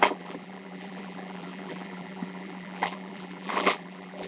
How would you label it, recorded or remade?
remade